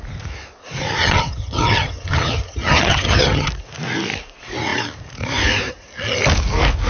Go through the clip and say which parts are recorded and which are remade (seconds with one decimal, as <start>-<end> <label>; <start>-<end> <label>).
0.0-1.0 recorded; 1.0-3.5 remade; 3.5-6.9 recorded